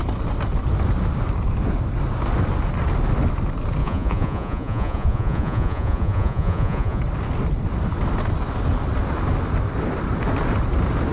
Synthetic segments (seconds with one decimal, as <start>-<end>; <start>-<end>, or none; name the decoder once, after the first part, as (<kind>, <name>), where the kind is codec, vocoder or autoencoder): 3.8-7.0 (vocoder, Vocos)